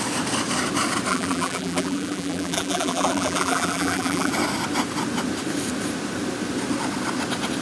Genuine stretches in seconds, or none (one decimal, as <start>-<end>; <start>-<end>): 0.0-1.1; 4.3-7.6

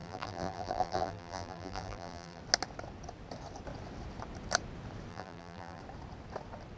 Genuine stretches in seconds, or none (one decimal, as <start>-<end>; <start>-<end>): 2.4-5.1; 5.8-6.8

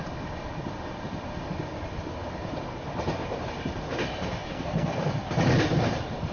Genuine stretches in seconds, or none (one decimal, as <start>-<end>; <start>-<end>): 0.0-4.5; 5.1-6.3